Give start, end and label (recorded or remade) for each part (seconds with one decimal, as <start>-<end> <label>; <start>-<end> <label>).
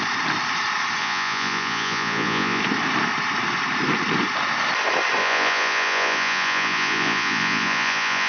0.0-1.0 recorded; 1.0-2.6 remade; 2.6-5.2 recorded; 5.2-8.3 remade